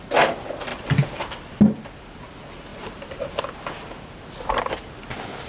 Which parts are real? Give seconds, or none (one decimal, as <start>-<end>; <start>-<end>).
0.0-0.7; 1.3-2.7; 3.4-5.5